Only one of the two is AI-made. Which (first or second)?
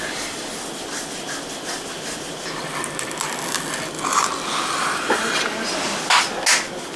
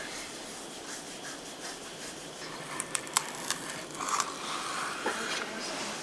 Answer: second